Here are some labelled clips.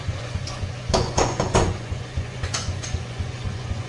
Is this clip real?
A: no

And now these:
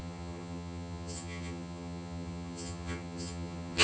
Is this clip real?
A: no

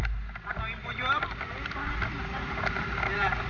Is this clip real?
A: yes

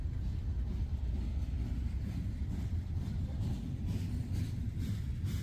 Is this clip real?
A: yes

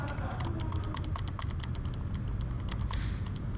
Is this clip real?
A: yes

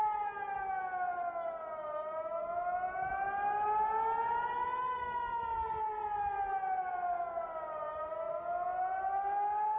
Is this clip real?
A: yes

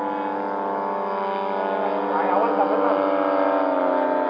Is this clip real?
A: yes